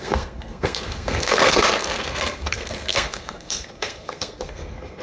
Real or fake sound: fake